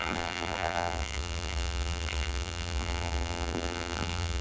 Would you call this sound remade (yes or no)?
yes